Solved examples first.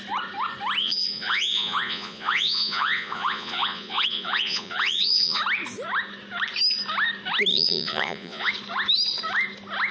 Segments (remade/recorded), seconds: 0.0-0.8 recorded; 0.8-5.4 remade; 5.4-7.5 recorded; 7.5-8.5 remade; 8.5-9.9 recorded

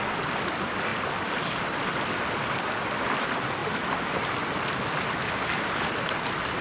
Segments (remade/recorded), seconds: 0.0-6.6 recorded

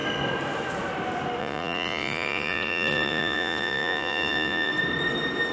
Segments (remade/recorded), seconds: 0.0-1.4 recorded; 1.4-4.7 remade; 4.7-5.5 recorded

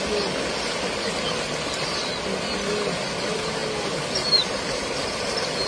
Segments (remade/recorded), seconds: 0.0-5.7 recorded

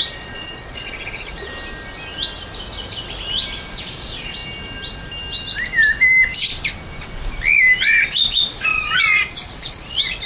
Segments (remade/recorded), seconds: 0.0-1.5 remade; 1.5-3.7 recorded; 3.7-4.4 remade; 4.4-8.0 recorded; 8.0-10.3 remade

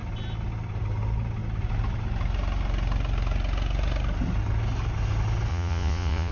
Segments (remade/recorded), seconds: 0.0-5.5 recorded; 5.5-6.3 remade

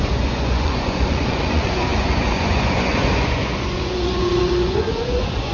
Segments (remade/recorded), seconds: 0.0-5.5 remade

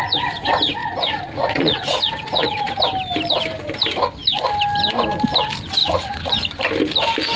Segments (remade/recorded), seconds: 0.0-0.8 recorded; 0.8-2.8 remade; 2.8-5.8 recorded; 5.8-6.3 remade; 6.3-7.4 recorded